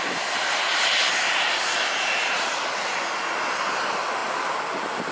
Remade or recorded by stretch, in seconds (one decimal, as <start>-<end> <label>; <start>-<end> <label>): 0.0-5.1 recorded